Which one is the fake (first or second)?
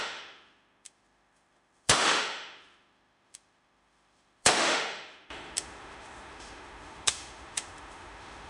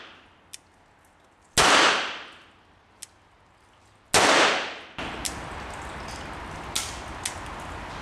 first